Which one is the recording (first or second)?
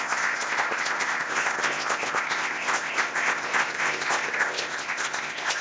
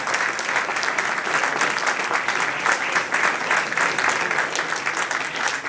second